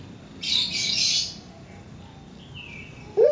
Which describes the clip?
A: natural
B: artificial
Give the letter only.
A